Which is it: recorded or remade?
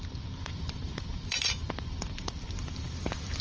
remade